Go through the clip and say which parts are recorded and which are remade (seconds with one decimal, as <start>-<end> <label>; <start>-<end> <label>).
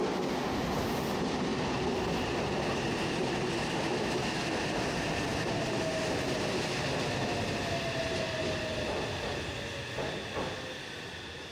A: 0.0-11.5 recorded